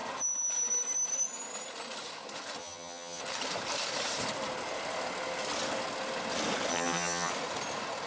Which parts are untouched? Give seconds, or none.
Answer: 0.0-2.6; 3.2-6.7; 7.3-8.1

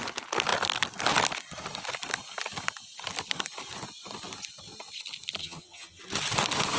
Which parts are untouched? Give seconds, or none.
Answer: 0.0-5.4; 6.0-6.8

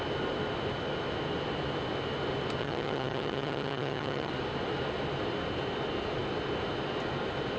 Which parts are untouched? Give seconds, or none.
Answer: 0.0-2.6; 4.3-7.6